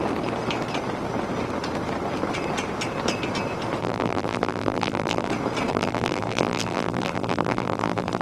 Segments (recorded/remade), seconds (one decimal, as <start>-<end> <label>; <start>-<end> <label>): 0.0-3.8 recorded; 3.8-5.3 remade; 5.3-5.7 recorded; 5.7-8.2 remade